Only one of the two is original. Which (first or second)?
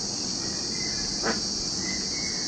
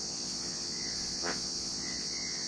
first